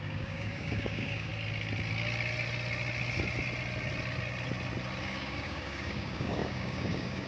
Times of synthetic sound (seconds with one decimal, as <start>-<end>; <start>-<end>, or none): 0.0-1.3; 5.0-7.3